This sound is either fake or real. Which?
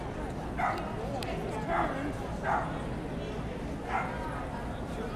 real